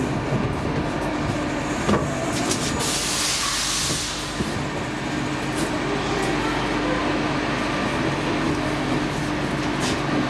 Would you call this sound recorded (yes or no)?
yes